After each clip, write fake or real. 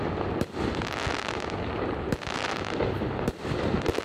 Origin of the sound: real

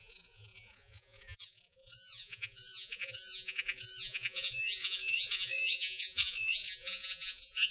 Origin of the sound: fake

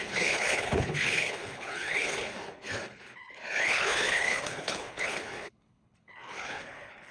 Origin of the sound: fake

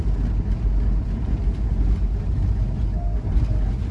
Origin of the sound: real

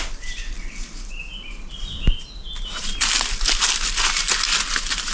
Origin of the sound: real